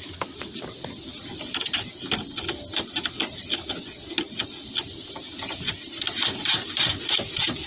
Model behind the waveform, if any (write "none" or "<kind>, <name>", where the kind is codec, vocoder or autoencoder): none